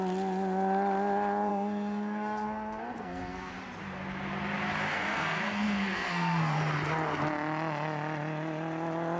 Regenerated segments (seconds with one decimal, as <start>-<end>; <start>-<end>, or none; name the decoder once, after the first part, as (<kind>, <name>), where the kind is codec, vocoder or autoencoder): 1.5-3.5 (codec, SNAC); 4.9-6.5